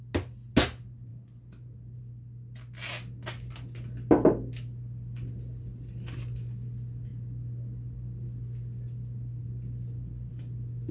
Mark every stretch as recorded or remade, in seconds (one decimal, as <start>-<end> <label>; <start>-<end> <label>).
0.0-10.9 recorded